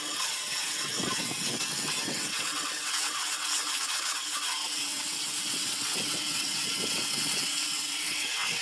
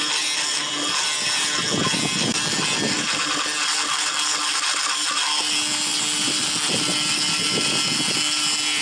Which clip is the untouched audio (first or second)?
second